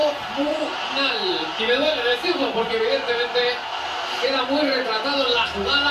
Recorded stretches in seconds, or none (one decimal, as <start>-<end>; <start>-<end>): 0.8-5.9